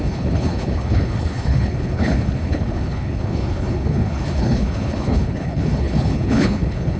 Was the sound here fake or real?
fake